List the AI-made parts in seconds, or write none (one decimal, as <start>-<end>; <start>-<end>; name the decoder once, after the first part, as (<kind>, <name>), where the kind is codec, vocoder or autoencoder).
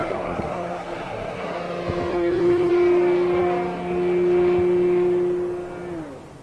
0.0-1.6 (codec, SNAC); 2.1-2.7